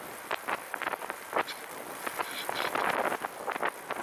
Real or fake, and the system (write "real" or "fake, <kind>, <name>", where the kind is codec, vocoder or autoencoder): real